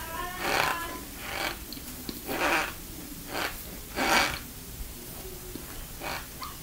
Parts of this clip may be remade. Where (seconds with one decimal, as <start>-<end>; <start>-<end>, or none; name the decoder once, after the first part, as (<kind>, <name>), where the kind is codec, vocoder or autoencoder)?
none